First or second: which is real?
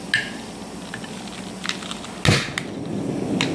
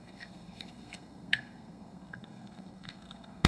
first